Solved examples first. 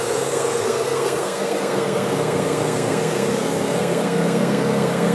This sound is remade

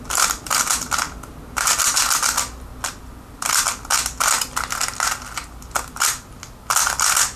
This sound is recorded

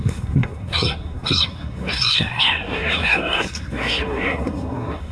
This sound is remade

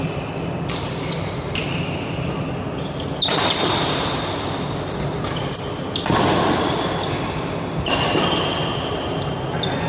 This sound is recorded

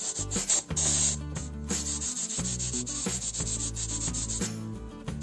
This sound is recorded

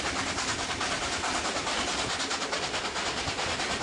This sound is recorded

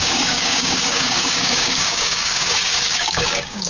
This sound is remade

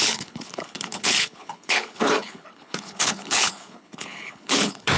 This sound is remade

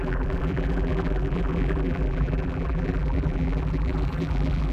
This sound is remade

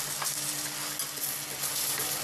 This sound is recorded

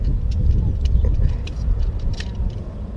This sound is remade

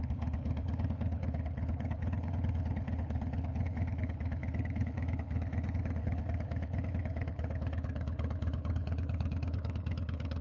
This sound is remade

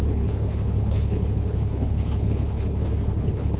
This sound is remade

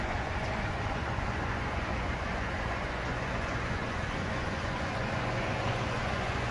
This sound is remade